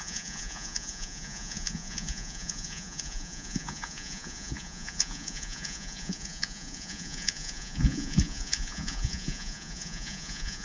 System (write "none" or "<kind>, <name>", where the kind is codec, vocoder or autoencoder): vocoder, Vocos